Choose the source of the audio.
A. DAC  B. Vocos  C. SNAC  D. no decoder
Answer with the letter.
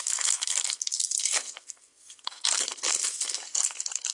C